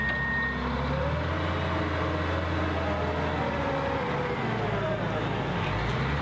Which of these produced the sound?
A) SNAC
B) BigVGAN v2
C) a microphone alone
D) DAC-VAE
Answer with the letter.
C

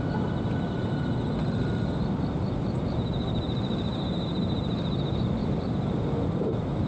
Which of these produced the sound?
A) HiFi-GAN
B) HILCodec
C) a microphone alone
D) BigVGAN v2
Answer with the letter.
C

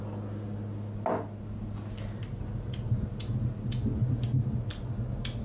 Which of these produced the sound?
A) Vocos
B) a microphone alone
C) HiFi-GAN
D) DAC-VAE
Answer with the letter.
B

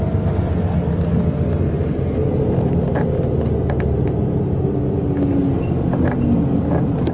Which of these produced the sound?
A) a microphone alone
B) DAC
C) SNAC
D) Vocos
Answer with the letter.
A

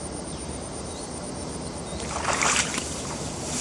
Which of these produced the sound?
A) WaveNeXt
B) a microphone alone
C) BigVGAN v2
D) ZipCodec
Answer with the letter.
C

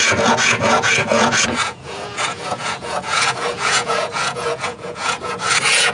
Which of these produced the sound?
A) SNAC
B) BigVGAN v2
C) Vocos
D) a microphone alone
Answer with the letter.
C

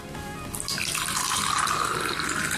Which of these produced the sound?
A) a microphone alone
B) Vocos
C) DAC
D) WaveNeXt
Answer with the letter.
A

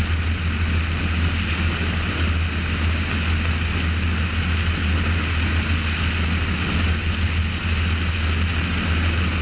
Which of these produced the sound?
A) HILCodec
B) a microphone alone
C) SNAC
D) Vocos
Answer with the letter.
B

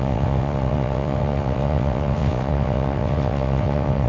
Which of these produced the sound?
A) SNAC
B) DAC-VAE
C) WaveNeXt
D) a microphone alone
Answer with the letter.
C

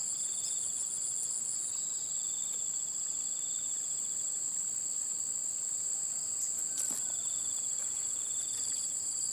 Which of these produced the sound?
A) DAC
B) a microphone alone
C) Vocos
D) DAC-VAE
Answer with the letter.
B